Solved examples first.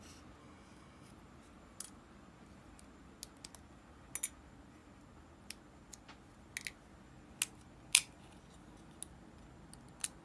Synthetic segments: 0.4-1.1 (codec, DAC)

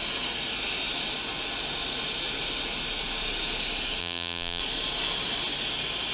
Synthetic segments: 4.0-4.6 (vocoder, BigVGAN v2)

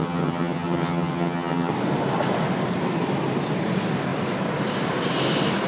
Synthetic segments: 0.0-1.7 (vocoder, HiFi-GAN)

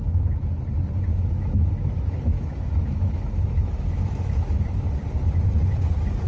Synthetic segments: 1.1-4.9 (autoencoder, DAC-VAE)

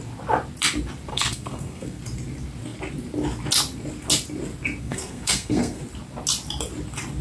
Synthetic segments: 1.1-2.0 (codec, SNAC); 4.8-5.8